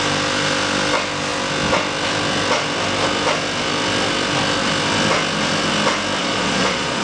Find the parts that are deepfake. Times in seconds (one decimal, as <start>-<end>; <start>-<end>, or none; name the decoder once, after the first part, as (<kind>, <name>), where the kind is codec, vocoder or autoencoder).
6.2-7.0 (vocoder, Vocos)

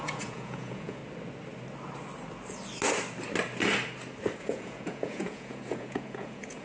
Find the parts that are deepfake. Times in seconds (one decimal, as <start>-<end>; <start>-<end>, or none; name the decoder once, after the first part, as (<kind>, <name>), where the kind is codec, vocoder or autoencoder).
0.0-1.0 (vocoder, Vocos); 4.4-6.6